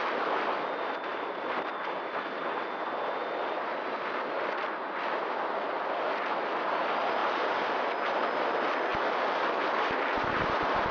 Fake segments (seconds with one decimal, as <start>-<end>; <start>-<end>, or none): 1.1-1.9; 7.2-7.9; 8.9-10.9